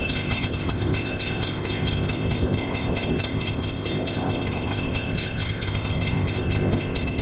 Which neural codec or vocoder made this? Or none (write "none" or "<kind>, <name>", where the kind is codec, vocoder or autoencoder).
codec, ZipCodec